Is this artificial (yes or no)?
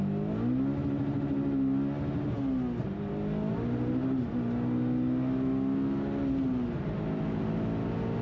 no